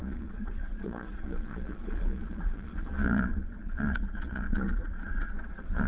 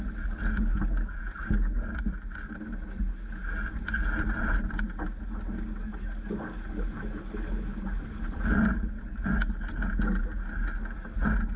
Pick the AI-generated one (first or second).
first